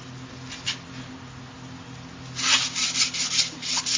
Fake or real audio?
real